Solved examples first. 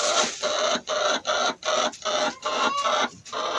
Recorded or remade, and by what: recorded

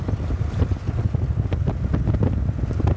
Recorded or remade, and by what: recorded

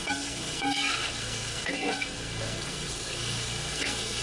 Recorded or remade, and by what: remade, codec, SNAC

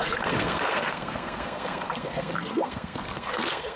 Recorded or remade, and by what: remade, codec, SNAC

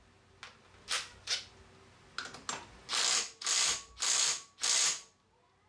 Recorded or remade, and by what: recorded